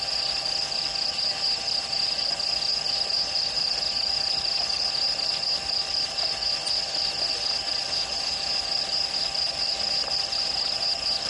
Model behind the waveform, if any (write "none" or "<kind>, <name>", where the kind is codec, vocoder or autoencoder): none